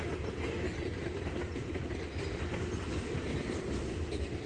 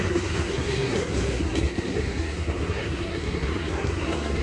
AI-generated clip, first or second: second